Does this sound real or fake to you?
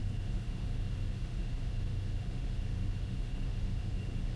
fake